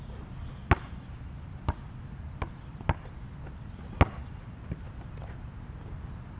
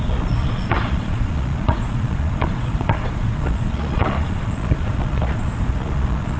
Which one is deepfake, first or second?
second